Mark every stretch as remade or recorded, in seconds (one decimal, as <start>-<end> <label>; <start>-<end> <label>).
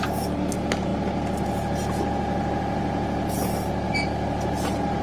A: 0.0-5.0 recorded